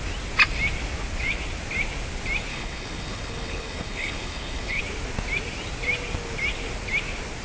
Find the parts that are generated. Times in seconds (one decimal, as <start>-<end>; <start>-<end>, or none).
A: 2.5-4.8